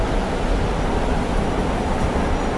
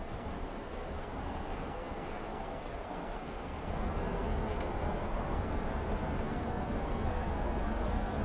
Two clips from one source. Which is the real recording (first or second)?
first